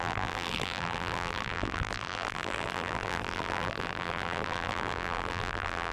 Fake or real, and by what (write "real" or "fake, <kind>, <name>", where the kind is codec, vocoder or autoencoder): fake, vocoder, BigVGAN v2